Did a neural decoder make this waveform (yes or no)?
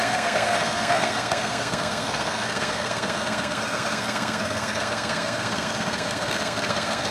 yes